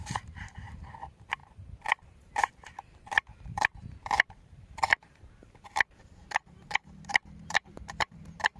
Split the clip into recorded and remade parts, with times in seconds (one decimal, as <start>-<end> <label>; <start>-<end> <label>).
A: 0.0-8.6 remade